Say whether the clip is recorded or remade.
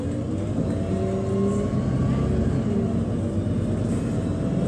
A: recorded